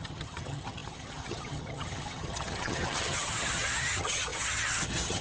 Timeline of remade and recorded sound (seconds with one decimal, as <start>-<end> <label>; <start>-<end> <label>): 0.0-5.2 remade